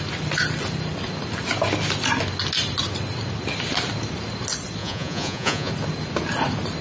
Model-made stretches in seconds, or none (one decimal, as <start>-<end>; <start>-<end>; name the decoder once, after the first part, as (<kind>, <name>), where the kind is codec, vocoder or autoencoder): 4.8-5.7 (vocoder, Vocos)